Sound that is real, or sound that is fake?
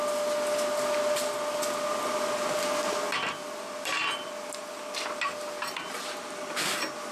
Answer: real